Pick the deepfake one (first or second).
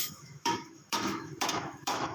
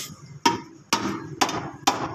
first